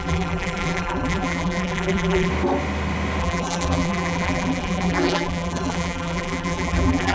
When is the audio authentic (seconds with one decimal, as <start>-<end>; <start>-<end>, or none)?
2.3-3.2